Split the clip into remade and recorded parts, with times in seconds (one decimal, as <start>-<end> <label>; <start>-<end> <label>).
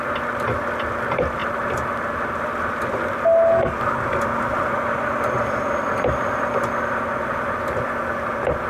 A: 0.0-8.7 recorded